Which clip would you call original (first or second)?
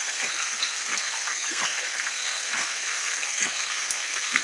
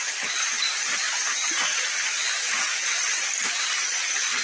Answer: second